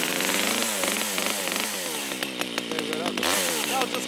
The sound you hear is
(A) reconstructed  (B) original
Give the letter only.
B